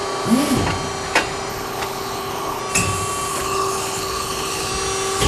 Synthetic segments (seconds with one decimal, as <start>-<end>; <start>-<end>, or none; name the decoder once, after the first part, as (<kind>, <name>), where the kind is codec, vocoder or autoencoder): 1.5-2.6 (codec, HILCodec); 3.3-4.7